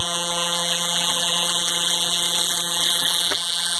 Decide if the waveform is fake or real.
fake